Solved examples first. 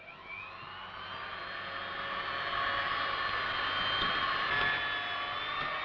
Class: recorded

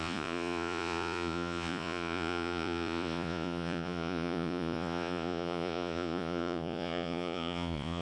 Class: remade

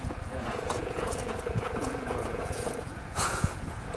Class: remade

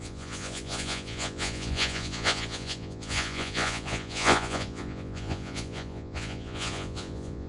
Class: remade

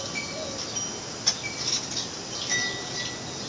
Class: recorded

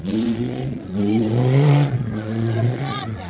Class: remade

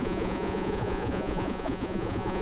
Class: remade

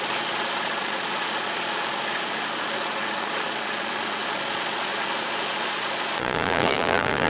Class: remade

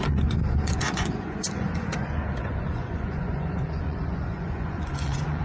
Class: remade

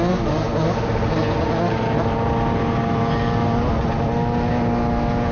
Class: recorded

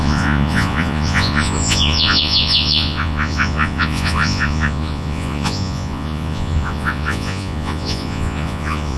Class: remade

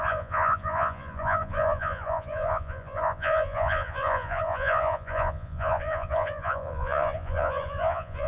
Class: remade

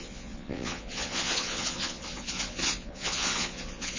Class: remade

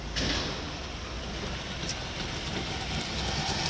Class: recorded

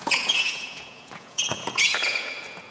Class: remade